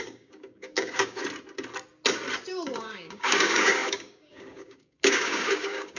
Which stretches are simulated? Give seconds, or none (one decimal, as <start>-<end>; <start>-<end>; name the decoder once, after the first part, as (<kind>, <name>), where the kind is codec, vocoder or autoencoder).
0.0-1.2 (codec, DAC); 2.8-6.0